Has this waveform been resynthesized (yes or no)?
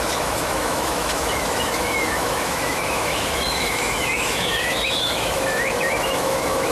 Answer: yes